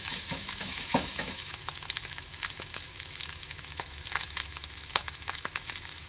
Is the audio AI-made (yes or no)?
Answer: yes